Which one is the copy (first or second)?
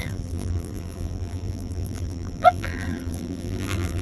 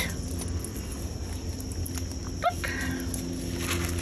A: first